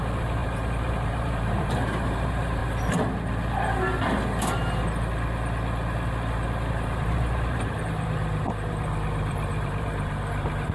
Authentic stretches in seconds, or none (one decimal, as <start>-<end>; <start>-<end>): 2.6-6.7